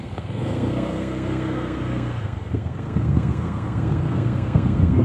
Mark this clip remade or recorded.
remade